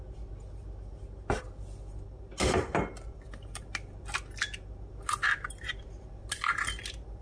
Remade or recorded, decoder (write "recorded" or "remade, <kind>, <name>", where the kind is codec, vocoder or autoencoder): recorded